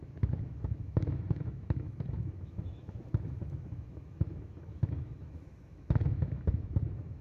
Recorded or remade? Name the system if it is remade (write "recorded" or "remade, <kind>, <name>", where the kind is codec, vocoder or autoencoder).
remade, autoencoder, DAC-VAE